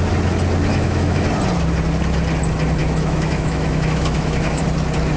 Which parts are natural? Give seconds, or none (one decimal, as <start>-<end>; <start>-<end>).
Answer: 0.0-0.7; 1.3-2.8; 4.6-5.2